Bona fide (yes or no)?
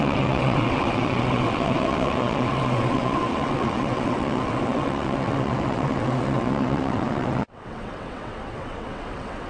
no